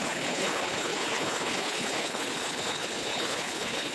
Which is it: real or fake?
fake